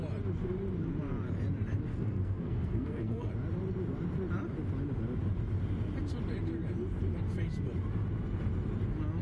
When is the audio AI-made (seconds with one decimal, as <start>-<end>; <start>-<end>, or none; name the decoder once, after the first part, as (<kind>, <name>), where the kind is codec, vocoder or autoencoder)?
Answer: 1.9-3.3 (codec, SNAC)